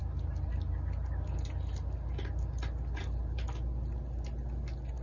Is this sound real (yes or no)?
yes